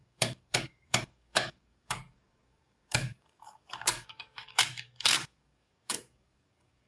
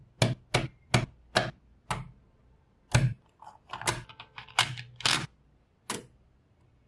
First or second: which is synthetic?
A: first